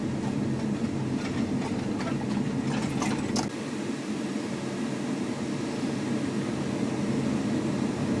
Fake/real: real